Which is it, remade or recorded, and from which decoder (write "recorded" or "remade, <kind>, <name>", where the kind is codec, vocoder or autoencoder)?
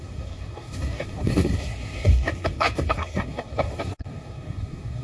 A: remade, codec, SNAC